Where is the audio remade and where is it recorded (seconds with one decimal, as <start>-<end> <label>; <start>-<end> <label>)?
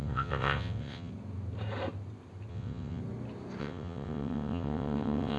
0.0-1.1 remade; 1.1-2.5 recorded; 2.5-3.0 remade; 3.0-3.6 recorded; 3.6-5.4 remade